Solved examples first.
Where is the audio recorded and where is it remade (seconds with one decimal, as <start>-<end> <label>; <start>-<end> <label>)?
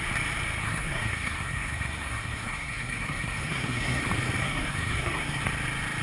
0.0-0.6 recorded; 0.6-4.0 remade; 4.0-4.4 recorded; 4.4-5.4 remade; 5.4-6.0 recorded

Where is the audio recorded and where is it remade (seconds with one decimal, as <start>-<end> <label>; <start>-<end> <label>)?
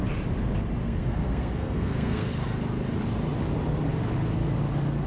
0.0-0.8 recorded; 0.8-2.3 remade; 2.3-5.1 recorded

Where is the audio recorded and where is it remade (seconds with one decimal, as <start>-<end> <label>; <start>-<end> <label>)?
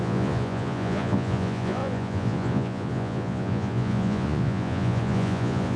0.0-5.8 remade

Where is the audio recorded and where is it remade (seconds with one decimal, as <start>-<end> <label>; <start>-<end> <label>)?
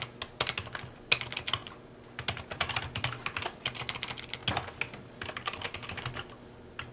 0.0-6.9 recorded